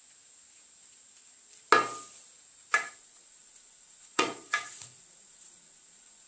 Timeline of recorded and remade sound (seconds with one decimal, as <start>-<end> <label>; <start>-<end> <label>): 0.0-3.0 recorded; 3.0-6.3 remade